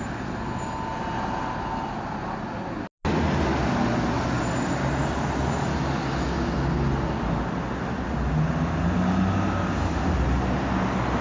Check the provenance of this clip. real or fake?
real